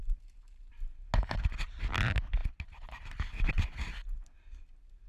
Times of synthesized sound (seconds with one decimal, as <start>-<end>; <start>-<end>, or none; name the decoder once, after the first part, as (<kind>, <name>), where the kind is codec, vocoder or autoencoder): none